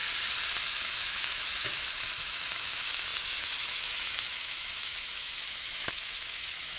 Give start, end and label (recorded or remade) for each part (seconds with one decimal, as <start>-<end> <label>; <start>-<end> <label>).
0.0-0.7 recorded; 0.7-6.8 remade